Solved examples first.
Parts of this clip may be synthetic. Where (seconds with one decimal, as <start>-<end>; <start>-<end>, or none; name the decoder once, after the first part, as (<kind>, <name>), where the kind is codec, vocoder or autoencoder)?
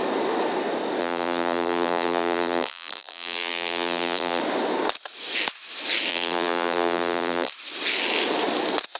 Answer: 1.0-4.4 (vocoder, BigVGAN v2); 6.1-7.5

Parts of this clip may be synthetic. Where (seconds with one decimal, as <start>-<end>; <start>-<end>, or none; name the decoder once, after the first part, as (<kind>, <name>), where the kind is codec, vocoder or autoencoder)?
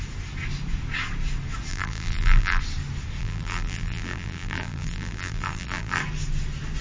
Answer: 1.7-2.6 (vocoder, BigVGAN v2); 3.2-6.0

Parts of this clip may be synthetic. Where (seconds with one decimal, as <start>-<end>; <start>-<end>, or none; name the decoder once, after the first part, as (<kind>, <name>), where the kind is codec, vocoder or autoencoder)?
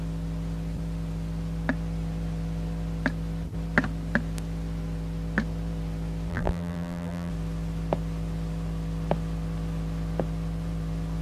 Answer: 6.3-7.3 (vocoder, BigVGAN v2)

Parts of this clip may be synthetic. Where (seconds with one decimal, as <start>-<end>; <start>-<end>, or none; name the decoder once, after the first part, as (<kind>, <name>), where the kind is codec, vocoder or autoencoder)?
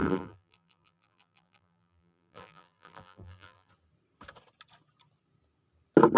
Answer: 0.0-3.7 (vocoder, BigVGAN v2)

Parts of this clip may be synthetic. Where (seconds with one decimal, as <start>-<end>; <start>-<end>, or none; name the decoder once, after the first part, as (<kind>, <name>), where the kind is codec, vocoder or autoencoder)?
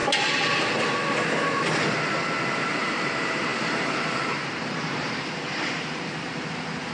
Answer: 2.6-6.9 (vocoder, BigVGAN v2)